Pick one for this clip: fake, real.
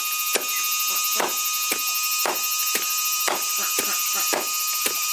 real